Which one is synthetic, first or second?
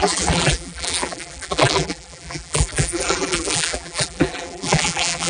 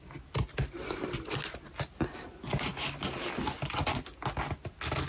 first